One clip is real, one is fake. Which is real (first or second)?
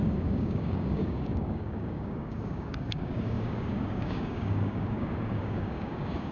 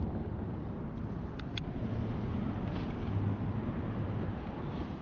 second